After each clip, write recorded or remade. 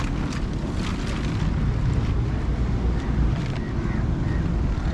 recorded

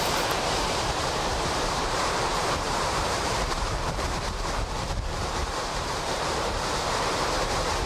remade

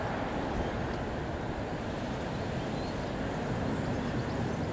recorded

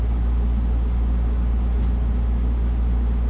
recorded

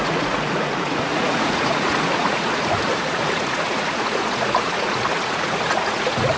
remade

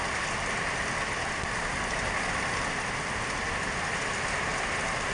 recorded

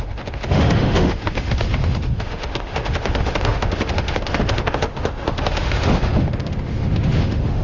remade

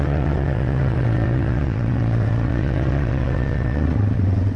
remade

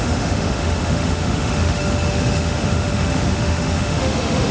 remade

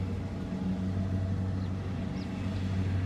recorded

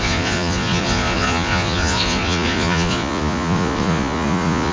remade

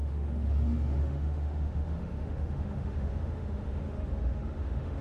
remade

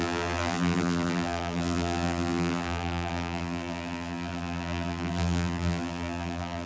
remade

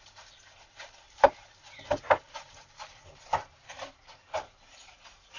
remade